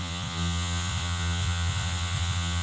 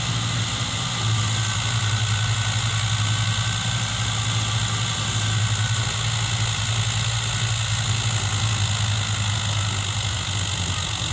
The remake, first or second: first